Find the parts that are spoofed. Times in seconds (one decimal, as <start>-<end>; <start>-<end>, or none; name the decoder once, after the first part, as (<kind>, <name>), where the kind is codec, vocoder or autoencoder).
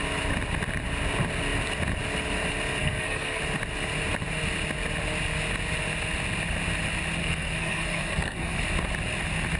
2.8-3.4 (codec, SNAC); 7.2-8.6